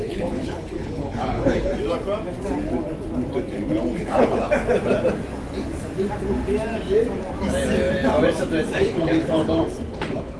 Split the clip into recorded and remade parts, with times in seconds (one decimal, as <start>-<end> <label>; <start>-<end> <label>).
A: 0.0-1.7 remade; 1.7-4.0 recorded; 4.0-4.5 remade; 4.5-8.7 recorded; 8.7-10.4 remade